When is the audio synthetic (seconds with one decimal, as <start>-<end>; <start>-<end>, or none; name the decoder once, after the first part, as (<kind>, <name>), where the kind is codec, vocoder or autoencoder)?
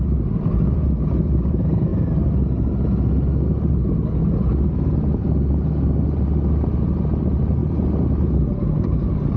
none